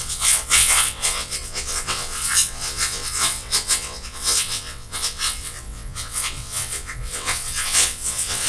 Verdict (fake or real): fake